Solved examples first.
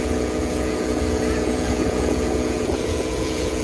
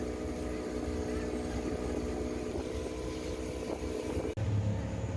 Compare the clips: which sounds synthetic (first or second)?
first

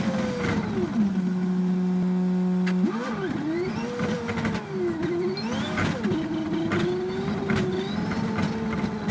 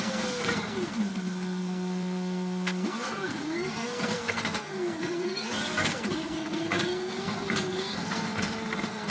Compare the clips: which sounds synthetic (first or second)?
second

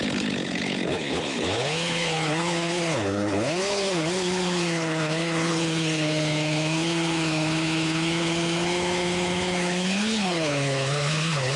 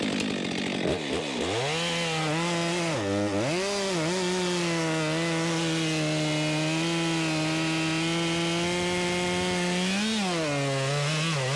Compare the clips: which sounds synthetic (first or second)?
first